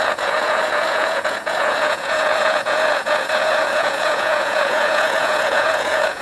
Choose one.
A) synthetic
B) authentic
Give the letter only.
A